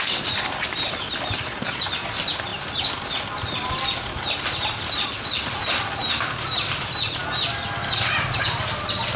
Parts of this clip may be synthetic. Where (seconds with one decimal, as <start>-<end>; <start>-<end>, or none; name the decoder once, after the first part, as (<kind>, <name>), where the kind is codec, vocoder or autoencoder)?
none